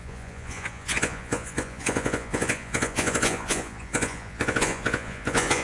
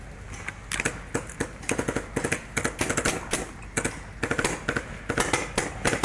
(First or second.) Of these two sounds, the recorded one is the second